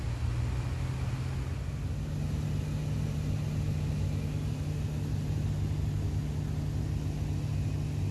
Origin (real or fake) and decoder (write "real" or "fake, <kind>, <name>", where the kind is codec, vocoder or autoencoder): real